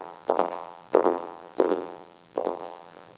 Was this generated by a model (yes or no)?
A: yes